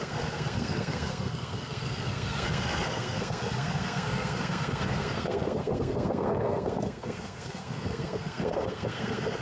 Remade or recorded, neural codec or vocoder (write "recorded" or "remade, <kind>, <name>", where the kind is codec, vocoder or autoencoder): remade, codec, SNAC